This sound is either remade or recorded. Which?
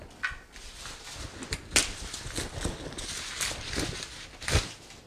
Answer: recorded